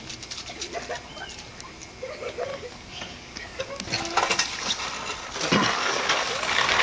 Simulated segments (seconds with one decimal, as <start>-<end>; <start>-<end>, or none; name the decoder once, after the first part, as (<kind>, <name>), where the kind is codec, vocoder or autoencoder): 2.5-3.7 (codec, DAC); 5.8-6.8